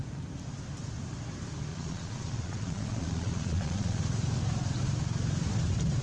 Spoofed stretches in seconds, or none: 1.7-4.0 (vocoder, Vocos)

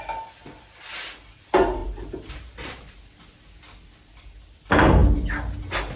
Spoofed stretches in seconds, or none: 1.8-2.3 (vocoder, BigVGAN v2)

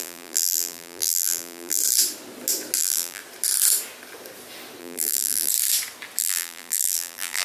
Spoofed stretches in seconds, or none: 0.0-1.8 (vocoder, BigVGAN v2); 2.8-3.2; 4.8-5.5; 6.2-7.4

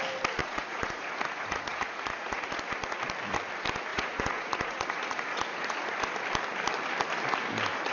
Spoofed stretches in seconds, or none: 0.4-2.6 (vocoder, Vocos); 3.9-5.7